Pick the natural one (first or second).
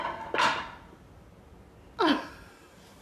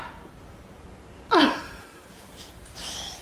first